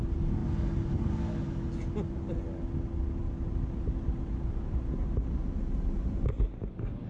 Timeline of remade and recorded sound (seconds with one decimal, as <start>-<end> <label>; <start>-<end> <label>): 0.0-7.1 recorded